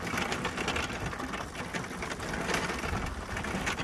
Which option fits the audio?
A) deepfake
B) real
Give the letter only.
B